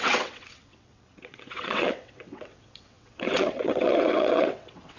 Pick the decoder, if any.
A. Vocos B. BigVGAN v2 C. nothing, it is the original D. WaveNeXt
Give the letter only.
D